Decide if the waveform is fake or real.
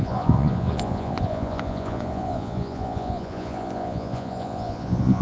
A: fake